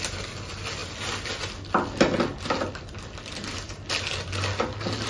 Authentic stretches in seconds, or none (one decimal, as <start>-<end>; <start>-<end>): 0.0-5.1